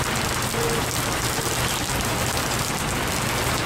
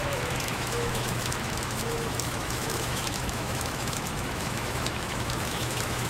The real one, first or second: first